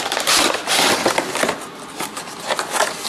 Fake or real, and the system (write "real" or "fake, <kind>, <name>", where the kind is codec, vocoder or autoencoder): real